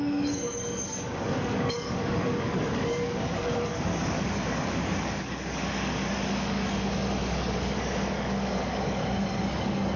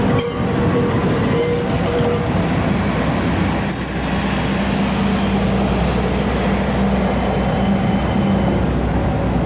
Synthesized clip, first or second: first